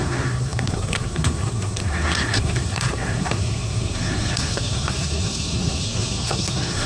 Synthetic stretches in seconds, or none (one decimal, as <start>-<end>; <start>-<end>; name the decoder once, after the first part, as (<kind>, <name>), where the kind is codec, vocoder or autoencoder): 0.0-6.9 (codec, SNAC)